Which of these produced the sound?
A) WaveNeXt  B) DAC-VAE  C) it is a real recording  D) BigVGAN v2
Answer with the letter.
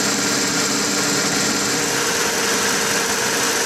C